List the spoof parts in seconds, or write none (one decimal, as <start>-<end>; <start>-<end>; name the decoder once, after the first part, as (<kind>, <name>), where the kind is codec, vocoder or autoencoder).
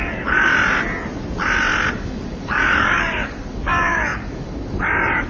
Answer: 0.0-0.5 (codec, DAC); 1.9-5.3